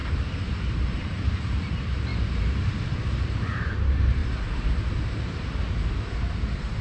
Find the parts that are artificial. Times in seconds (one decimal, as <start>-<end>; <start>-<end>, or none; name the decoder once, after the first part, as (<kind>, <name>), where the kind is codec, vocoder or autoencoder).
0.8-6.8 (vocoder, BigVGAN v2)